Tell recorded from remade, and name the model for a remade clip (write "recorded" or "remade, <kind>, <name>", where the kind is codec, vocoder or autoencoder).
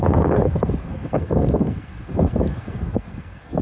remade, codec, SNAC